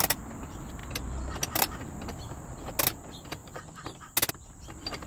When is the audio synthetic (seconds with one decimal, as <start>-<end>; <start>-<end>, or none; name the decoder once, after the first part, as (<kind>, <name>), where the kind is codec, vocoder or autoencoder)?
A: none